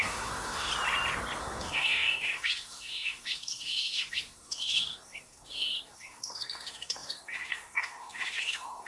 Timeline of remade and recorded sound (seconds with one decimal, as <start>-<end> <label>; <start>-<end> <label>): 0.0-0.7 remade; 0.7-1.4 recorded; 1.4-8.9 remade